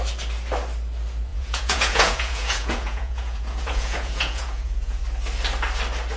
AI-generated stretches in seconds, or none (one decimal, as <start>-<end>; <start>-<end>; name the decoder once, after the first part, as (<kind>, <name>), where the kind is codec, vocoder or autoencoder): 1.3-5.0 (vocoder, Vocos)